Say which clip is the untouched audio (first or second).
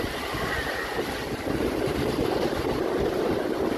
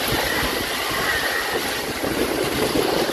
second